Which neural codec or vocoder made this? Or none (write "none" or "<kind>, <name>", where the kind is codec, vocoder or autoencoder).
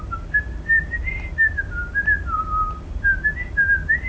none